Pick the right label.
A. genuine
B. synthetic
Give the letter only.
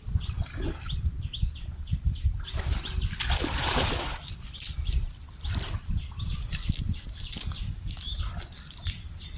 A